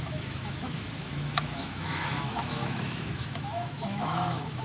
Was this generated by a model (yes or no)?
yes